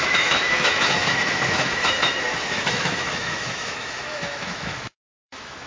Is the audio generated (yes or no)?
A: yes